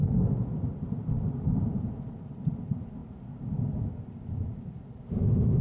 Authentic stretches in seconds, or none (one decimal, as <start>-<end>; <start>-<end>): 0.0-5.6